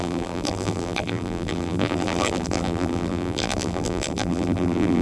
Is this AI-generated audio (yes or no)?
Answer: yes